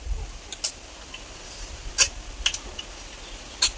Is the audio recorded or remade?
recorded